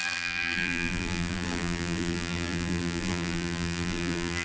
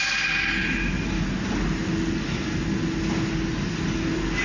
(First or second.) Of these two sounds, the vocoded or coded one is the first